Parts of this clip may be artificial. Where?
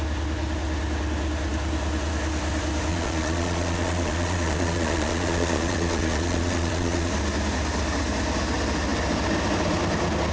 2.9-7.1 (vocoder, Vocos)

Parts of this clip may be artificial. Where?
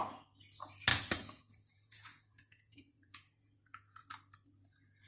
0.9-4.0 (vocoder, Vocos)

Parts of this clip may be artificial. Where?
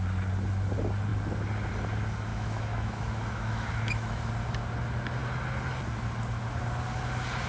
2.3-4.3 (autoencoder, DAC-VAE)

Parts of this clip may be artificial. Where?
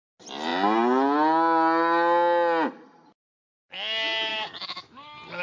none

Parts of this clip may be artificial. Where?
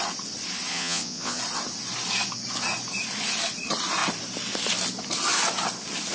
0.7-1.4 (vocoder, Vocos)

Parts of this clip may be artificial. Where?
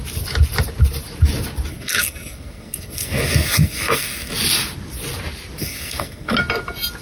1.7-4.3 (codec, SNAC); 5.6-6.4